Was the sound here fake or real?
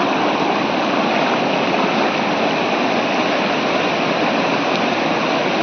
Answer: real